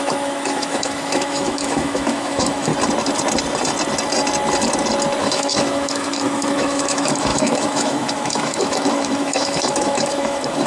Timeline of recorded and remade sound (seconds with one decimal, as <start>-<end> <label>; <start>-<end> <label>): 0.0-2.7 remade; 2.7-5.2 recorded; 5.2-10.7 remade